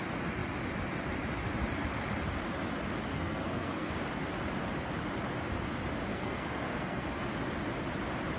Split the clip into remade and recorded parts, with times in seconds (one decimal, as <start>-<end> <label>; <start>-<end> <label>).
0.0-3.1 recorded; 3.1-3.9 remade; 3.9-6.1 recorded; 6.1-7.2 remade; 7.2-8.4 recorded